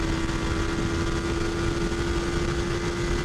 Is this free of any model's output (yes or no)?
yes